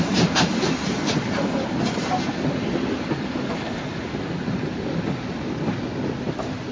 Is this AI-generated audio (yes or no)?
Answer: no